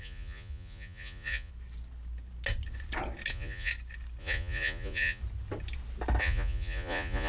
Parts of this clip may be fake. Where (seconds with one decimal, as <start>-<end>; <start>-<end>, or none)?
0.0-1.5; 3.3-3.7; 4.2-5.2; 6.2-7.3